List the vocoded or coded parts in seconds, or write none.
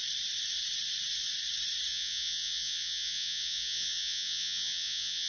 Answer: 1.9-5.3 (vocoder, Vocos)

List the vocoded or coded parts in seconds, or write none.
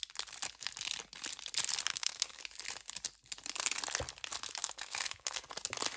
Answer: 1.9-2.4 (codec, SNAC); 4.6-5.5